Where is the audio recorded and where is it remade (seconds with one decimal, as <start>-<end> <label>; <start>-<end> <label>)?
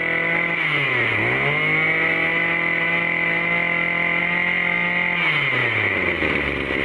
0.0-5.6 recorded; 5.6-6.8 remade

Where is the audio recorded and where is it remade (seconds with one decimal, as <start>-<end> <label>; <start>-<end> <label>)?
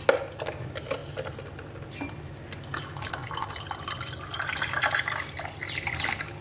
0.0-6.4 recorded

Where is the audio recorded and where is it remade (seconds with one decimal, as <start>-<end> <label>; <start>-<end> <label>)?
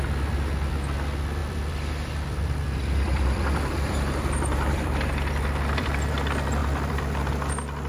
0.0-1.4 recorded; 1.4-6.1 remade; 6.1-6.6 recorded; 6.6-7.3 remade; 7.3-7.9 recorded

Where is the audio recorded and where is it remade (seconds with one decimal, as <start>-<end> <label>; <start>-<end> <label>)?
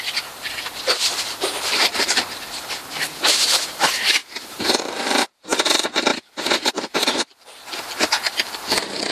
0.0-6.1 remade; 6.1-6.7 recorded; 6.7-9.1 remade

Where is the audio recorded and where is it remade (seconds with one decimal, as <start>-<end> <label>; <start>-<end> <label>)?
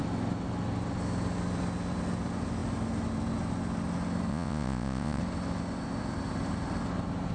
0.0-4.3 recorded; 4.3-5.2 remade; 5.2-7.3 recorded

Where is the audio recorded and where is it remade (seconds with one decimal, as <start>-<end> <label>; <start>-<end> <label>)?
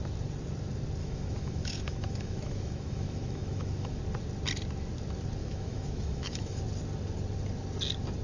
0.0-1.0 recorded; 1.0-4.0 remade; 4.0-5.4 recorded; 5.4-6.6 remade; 6.6-8.2 recorded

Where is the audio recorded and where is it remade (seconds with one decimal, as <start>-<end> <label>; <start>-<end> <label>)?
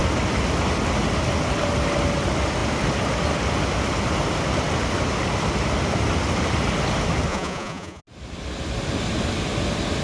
0.0-7.3 recorded; 7.3-8.0 remade; 8.0-10.0 recorded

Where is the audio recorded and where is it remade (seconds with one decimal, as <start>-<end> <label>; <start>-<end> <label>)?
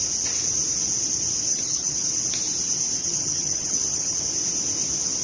0.0-1.5 recorded; 1.5-2.1 remade; 2.1-3.0 recorded; 3.0-4.2 remade; 4.2-5.2 recorded